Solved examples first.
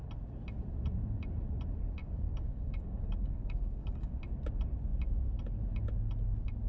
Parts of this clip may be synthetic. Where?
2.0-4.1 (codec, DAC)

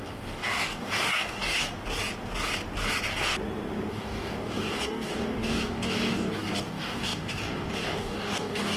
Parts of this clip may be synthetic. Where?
0.0-1.7 (codec, DAC); 3.9-8.8

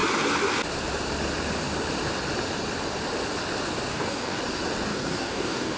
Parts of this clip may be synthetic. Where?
3.9-4.4 (codec, DAC); 4.9-5.8

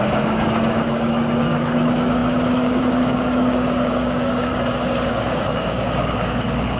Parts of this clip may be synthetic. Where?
0.0-4.5 (codec, DAC); 5.1-6.8

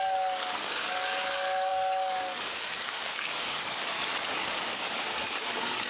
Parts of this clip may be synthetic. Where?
0.0-5.9 (codec, DAC)

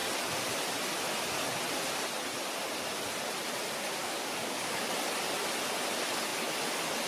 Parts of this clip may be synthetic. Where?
4.0-4.9 (codec, DAC)

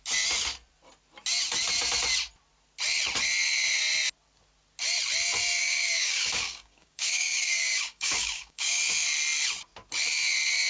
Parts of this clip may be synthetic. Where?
5.6-8.8 (codec, DAC)